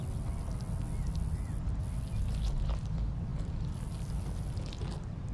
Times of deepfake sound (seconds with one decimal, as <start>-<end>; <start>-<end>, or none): none

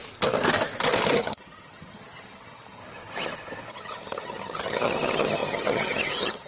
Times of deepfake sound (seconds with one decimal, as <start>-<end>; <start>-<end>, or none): 1.1-2.8; 3.7-6.5